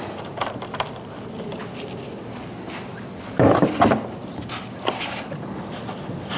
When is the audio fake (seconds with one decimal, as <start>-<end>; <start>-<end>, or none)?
none